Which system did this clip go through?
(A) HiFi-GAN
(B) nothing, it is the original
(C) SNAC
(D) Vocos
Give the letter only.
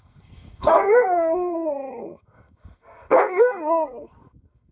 C